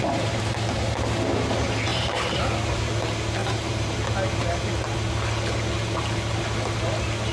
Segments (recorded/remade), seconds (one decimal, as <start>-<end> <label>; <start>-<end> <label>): 0.0-1.9 recorded; 1.9-2.4 remade; 2.4-3.4 recorded; 3.4-3.9 remade; 3.9-7.3 recorded